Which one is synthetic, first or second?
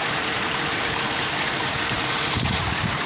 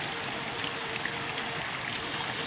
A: first